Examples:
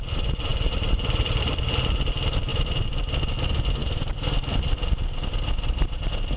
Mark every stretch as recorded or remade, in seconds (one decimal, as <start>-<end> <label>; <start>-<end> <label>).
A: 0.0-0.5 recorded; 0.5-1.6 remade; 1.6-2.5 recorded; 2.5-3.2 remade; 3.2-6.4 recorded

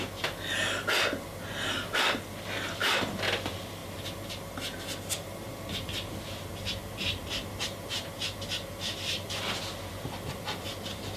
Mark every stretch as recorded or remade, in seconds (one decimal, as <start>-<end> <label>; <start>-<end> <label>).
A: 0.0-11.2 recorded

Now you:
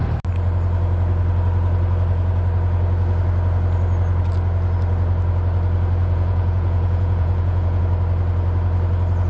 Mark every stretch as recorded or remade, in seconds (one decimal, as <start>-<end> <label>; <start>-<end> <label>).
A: 0.0-6.0 recorded; 6.0-7.8 remade; 7.8-9.3 recorded

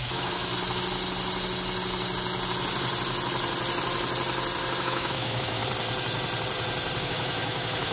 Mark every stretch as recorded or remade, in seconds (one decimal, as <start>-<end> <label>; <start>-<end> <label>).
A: 0.0-0.5 remade; 0.5-4.8 recorded; 4.8-5.6 remade; 5.6-7.0 recorded; 7.0-7.9 remade

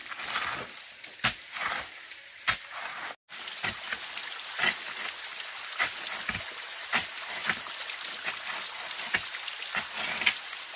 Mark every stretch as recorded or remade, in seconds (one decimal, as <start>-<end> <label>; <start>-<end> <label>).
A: 0.0-10.8 recorded

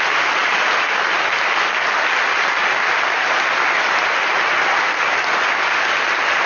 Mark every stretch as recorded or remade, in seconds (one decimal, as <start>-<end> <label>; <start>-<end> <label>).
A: 0.0-6.5 recorded

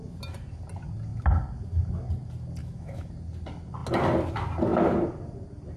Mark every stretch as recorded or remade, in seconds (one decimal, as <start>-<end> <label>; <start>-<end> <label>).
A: 0.0-2.6 recorded; 2.6-3.1 remade; 3.1-5.8 recorded